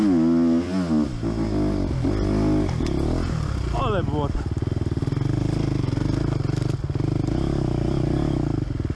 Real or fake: real